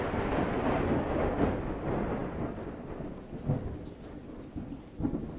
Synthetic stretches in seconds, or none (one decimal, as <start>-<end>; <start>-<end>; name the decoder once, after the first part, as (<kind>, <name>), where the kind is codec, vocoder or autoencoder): none